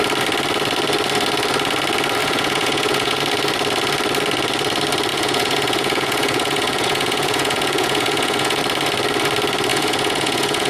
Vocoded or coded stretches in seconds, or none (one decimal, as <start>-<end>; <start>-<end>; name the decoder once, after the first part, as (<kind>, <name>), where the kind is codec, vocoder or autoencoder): 2.2-3.2 (vocoder, Vocos); 5.1-8.6; 9.7-10.7